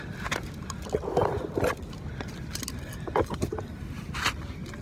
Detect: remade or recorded recorded